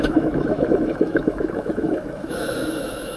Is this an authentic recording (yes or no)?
no